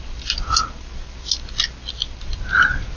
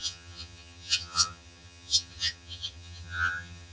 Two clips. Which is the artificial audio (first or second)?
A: second